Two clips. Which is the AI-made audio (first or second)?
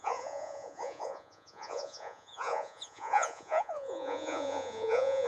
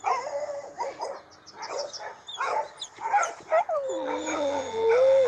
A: first